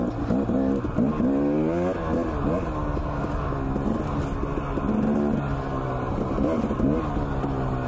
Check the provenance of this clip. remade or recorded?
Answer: recorded